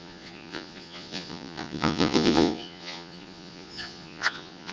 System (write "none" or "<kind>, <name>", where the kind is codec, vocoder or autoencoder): vocoder, Vocos